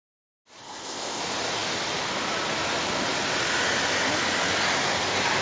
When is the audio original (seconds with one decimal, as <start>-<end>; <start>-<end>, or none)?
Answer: 0.0-0.6; 1.2-5.4